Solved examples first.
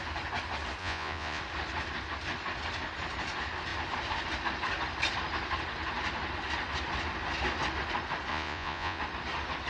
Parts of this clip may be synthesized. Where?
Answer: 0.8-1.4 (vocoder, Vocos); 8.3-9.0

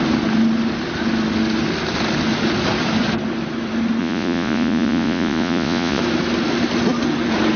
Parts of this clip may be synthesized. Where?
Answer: 4.0-6.0 (vocoder, Vocos)

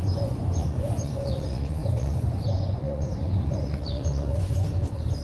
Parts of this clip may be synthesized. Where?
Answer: 0.0-5.2 (vocoder, Vocos)